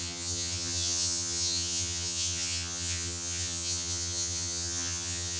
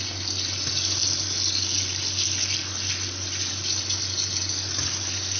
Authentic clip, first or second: second